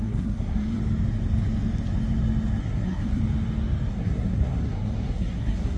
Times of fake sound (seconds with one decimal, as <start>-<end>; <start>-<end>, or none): 0.0-0.8; 2.6-3.2; 3.9-5.8